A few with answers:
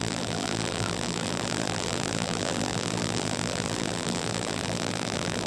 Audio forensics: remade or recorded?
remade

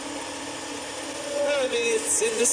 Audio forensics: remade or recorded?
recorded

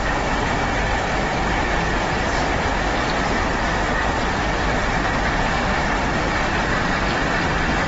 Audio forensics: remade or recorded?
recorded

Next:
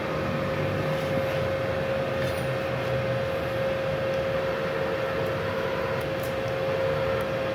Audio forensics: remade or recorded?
recorded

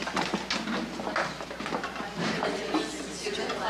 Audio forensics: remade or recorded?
recorded